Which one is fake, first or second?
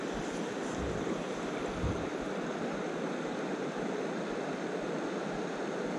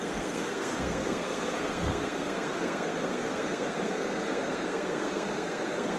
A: second